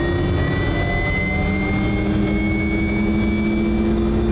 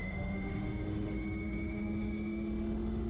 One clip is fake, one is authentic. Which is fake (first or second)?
second